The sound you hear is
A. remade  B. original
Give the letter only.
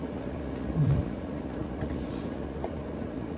A